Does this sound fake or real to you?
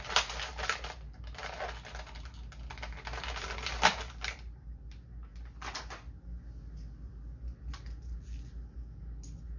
real